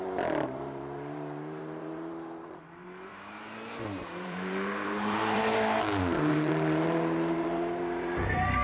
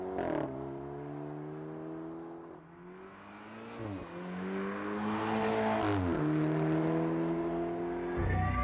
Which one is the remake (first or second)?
first